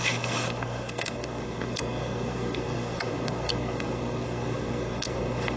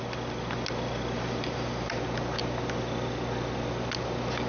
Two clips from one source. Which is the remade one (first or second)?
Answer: first